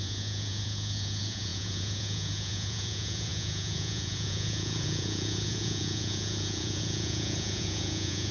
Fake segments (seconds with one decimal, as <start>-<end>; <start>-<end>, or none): 0.0-8.3